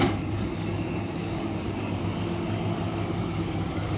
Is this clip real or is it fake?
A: fake